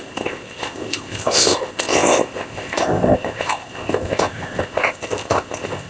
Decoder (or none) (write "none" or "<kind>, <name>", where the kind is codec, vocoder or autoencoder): codec, ZipCodec